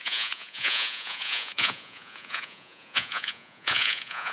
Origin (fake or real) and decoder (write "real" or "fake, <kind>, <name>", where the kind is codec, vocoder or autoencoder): fake, vocoder, Vocos